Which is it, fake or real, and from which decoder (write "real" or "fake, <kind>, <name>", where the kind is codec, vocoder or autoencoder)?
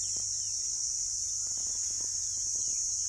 real